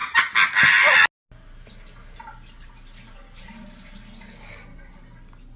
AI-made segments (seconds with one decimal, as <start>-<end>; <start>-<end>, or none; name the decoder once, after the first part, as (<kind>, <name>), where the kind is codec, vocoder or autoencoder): none

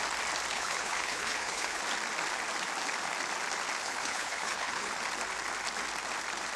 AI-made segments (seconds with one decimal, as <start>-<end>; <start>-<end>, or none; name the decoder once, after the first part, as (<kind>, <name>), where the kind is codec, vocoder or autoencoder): 0.5-1.8 (codec, HILCodec); 3.8-4.9

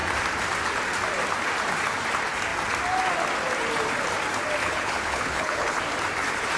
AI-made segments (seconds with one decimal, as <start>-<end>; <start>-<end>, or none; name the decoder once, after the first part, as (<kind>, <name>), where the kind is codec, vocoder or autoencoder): 4.6-5.8 (codec, HILCodec)

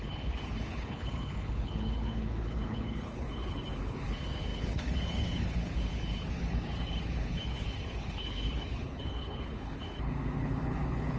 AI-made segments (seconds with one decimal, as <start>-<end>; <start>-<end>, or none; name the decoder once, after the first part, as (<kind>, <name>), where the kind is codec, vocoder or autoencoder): 0.0-11.2 (codec, HILCodec)

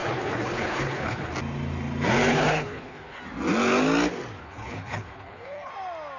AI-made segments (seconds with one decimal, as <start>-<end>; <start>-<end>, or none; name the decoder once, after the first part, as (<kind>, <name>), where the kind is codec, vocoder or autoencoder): 0.0-1.3 (codec, HILCodec); 2.3-3.2; 4.4-5.7

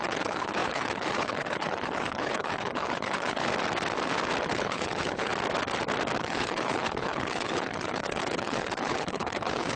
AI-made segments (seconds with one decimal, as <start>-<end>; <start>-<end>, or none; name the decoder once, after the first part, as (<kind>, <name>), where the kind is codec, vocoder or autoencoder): 0.0-3.4 (codec, HILCodec); 4.4-5.3; 6.2-9.8